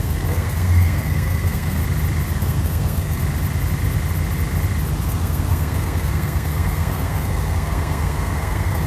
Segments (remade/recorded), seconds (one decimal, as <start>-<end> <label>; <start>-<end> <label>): 0.0-1.8 remade; 1.8-2.4 recorded; 2.4-3.2 remade; 3.2-5.0 recorded; 5.0-8.9 remade